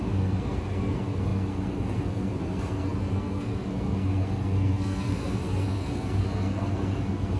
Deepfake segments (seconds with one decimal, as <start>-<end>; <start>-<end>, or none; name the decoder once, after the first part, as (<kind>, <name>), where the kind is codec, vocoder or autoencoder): 0.0-7.4 (codec, SNAC)